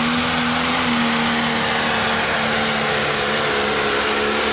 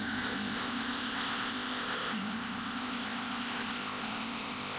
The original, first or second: first